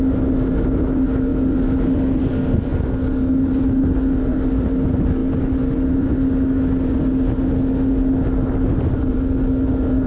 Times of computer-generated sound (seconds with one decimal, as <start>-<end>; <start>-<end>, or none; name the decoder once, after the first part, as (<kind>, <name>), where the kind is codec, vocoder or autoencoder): none